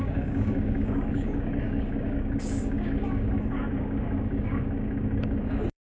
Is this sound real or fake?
fake